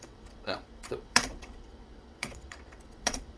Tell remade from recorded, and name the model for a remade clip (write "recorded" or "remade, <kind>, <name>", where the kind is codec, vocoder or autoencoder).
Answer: remade, vocoder, WaveNeXt